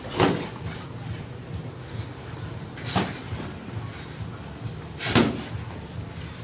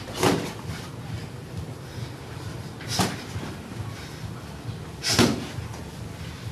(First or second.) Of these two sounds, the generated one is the second